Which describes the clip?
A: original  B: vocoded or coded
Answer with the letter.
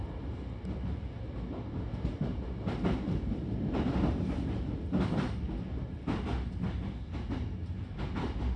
A